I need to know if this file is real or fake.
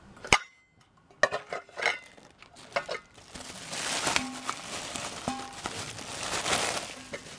real